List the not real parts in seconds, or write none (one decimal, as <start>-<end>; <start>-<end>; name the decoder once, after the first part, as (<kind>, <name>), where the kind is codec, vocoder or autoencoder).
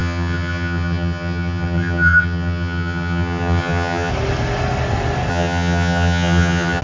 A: 0.0-4.1 (vocoder, HiFi-GAN); 5.3-6.8